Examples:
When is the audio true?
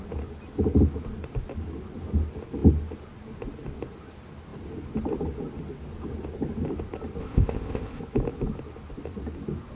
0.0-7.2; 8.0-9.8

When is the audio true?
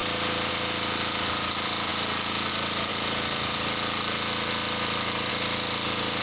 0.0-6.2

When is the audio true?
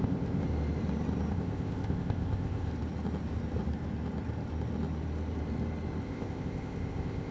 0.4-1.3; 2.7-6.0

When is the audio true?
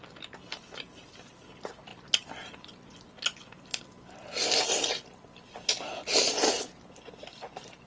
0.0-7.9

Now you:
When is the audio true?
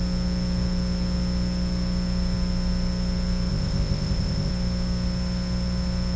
0.0-3.5; 4.5-6.2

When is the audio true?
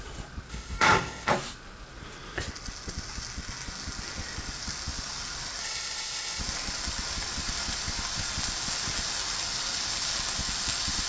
0.0-0.5; 1.3-5.6; 6.4-11.1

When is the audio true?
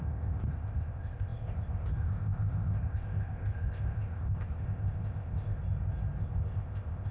5.6-6.2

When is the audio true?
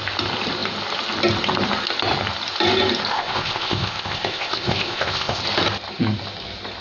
0.0-3.1; 5.4-6.8